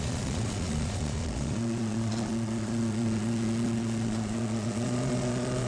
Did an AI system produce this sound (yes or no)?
yes